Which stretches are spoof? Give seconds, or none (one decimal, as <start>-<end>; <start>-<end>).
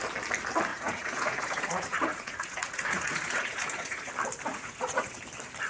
0.7-4.1; 4.5-5.2